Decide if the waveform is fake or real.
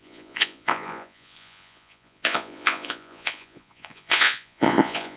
fake